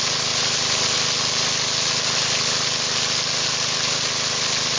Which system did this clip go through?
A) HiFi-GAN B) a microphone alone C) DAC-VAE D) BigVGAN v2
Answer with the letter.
B